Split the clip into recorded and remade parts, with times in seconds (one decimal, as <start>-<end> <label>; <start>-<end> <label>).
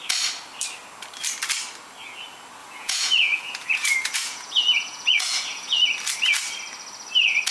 0.0-2.6 recorded; 2.6-5.8 remade; 5.8-7.5 recorded